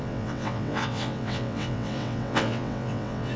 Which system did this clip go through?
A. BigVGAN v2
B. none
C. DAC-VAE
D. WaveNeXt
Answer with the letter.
D